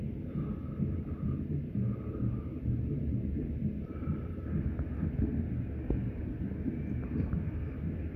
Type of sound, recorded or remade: recorded